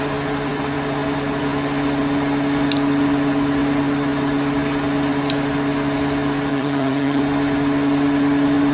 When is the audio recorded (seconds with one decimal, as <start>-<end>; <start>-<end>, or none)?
0.0-6.5; 7.2-8.7